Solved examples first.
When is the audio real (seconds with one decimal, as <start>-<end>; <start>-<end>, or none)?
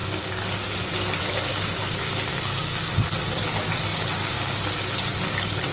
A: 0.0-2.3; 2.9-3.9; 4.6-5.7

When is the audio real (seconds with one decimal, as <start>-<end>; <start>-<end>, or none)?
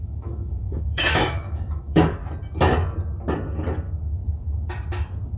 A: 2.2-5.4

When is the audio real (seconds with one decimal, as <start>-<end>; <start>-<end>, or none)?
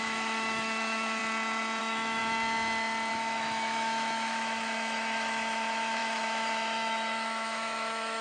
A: 1.2-1.8; 2.2-3.1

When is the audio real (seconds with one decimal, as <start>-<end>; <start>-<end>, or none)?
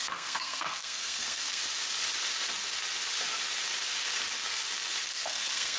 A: 1.6-5.1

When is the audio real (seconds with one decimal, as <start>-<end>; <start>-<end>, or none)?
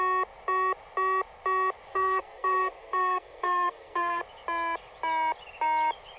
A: 0.0-1.9; 4.2-6.2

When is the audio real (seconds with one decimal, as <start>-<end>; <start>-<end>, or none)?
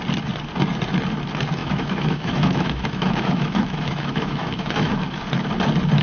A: 0.0-1.6; 5.2-6.0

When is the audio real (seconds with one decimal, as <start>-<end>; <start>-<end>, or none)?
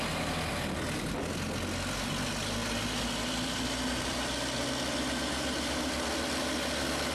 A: 0.0-7.1